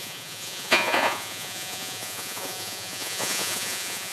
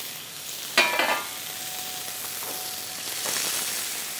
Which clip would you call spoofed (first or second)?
first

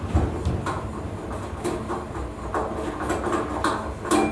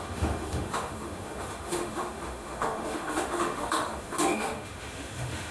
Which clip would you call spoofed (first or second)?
second